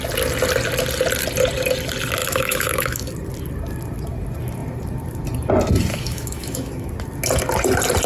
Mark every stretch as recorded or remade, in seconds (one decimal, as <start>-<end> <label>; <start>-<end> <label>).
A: 0.0-2.2 recorded; 2.2-3.1 remade; 3.1-5.9 recorded; 5.9-6.9 remade; 6.9-8.1 recorded